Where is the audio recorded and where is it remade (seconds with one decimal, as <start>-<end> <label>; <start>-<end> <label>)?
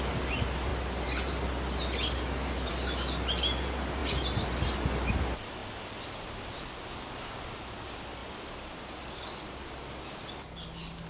0.0-11.1 recorded